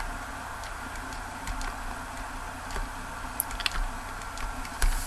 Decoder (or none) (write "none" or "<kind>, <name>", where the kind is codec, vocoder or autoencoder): none